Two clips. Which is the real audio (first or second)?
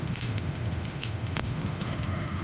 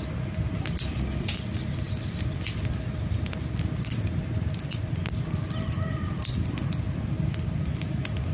second